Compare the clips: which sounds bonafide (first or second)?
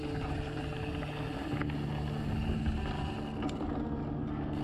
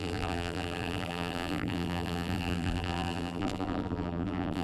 first